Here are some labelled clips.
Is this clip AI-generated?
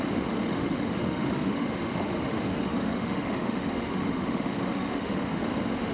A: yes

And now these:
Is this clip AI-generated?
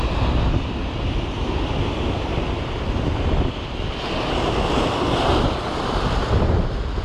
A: no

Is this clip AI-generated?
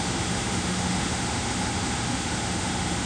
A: yes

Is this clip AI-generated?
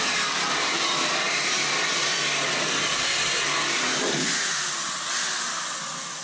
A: no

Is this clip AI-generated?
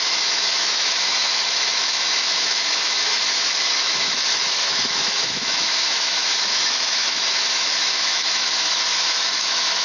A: yes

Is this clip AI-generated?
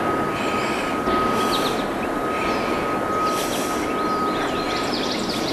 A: no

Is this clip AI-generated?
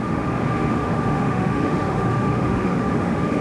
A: yes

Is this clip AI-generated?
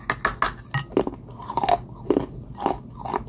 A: no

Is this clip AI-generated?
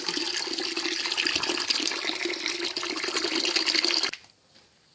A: no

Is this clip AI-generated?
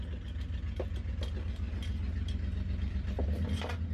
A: no